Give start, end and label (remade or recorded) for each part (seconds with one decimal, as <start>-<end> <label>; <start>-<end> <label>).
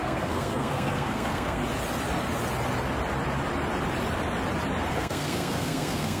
0.0-1.6 remade; 1.6-4.9 recorded; 4.9-6.2 remade